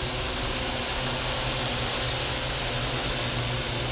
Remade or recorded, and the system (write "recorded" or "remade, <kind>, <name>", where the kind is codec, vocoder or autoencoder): recorded